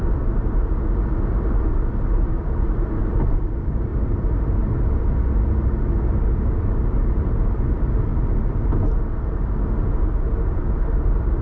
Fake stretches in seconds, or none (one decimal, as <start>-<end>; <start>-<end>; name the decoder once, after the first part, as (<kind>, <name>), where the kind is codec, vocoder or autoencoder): 0.0-3.9 (vocoder, BigVGAN v2); 6.1-8.1; 10.4-11.4